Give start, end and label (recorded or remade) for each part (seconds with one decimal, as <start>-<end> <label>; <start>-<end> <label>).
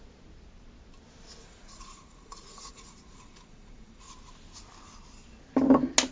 0.0-1.4 recorded; 1.4-4.1 remade; 4.1-6.1 recorded